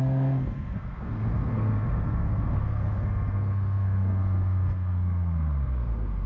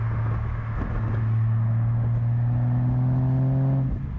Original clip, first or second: second